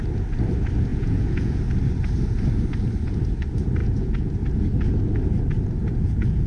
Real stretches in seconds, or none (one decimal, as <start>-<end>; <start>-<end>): 0.0-0.9; 1.6-3.8; 4.3-5.8